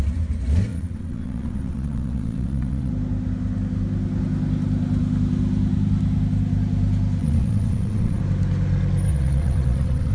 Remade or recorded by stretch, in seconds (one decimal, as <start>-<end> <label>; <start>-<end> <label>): 0.0-0.7 recorded; 0.7-2.9 remade; 2.9-7.2 recorded; 7.2-8.2 remade; 8.2-9.1 recorded; 9.1-10.1 remade